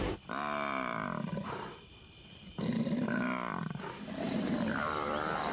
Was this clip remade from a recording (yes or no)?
yes